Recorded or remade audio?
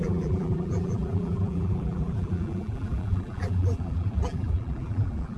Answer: remade